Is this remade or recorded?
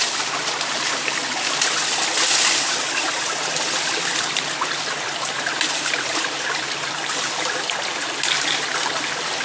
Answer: remade